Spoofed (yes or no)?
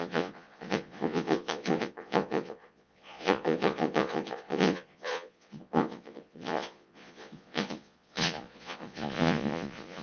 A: yes